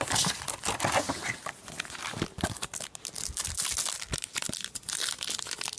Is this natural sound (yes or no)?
yes